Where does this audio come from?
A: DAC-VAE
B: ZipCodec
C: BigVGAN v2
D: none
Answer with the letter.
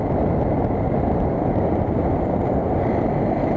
D